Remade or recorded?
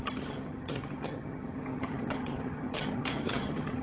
remade